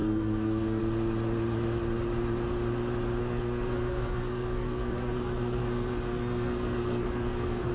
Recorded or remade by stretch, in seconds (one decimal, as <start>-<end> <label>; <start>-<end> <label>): 0.0-0.8 remade; 0.8-3.2 recorded; 3.2-7.7 remade